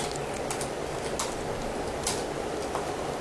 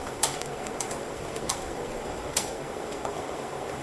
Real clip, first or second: first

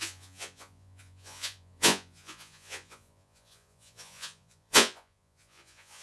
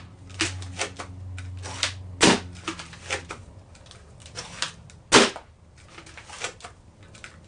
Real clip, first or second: second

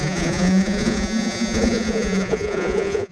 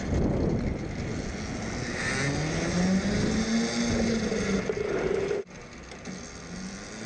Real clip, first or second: second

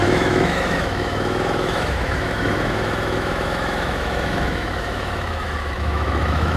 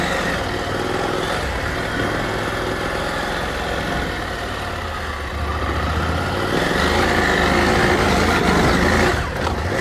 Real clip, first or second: second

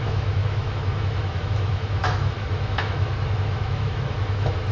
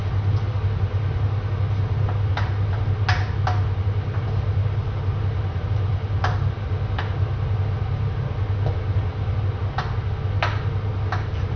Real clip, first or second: second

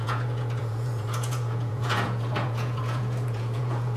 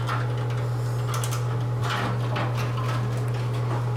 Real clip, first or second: second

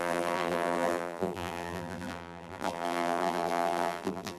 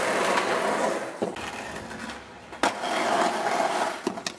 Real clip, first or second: second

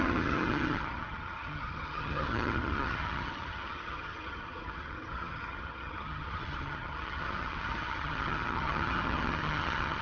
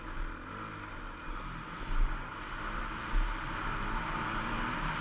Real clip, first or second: second